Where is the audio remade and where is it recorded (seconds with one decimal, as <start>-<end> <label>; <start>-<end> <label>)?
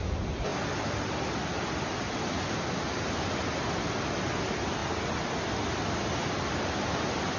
0.0-7.4 recorded